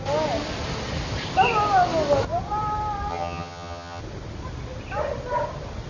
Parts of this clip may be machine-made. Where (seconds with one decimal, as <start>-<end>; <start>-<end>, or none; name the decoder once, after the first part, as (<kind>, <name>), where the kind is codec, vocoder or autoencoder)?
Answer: 3.1-4.0 (vocoder, HiFi-GAN)